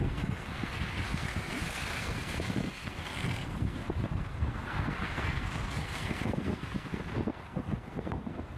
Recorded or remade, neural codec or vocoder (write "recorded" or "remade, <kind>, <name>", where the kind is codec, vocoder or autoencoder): remade, codec, SNAC